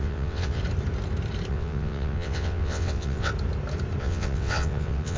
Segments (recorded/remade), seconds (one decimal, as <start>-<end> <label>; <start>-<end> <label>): 0.0-0.6 remade; 0.6-1.5 recorded; 1.5-3.3 remade; 3.3-4.0 recorded; 4.0-5.2 remade